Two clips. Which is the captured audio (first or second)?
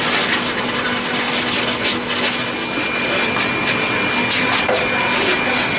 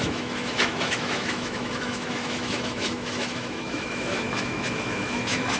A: first